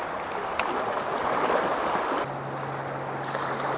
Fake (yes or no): no